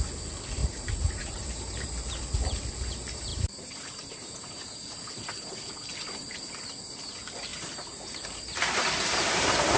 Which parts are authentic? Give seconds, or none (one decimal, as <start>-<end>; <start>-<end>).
0.0-0.6; 1.9-3.3; 6.5-7.5